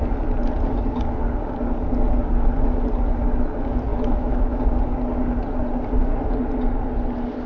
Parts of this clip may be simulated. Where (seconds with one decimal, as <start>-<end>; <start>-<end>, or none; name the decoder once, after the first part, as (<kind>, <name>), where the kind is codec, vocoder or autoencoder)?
3.9-4.6 (autoencoder, DAC-VAE)